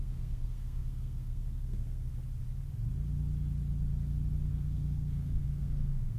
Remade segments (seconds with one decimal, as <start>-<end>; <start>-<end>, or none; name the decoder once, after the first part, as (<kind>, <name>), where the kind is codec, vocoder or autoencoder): 0.0-2.1 (codec, SNAC); 4.5-6.2